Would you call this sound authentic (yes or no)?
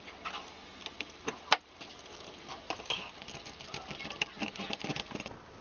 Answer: yes